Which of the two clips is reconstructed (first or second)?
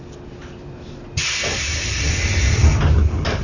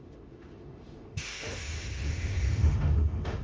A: second